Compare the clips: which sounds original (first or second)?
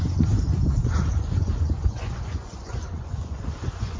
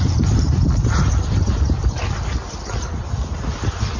second